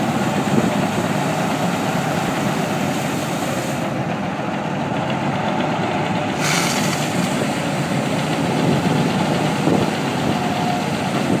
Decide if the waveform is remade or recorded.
recorded